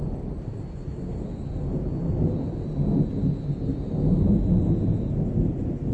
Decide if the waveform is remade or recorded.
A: recorded